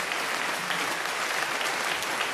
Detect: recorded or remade remade